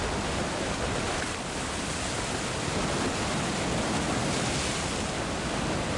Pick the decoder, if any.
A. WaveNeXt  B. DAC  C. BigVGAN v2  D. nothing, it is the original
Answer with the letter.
D